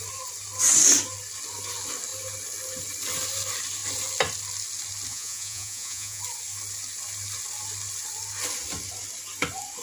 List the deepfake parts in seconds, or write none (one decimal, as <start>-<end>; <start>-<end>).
5.1-6.2